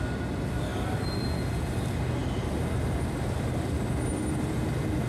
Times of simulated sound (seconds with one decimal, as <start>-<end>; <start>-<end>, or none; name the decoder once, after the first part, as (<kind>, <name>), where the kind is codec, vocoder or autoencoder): none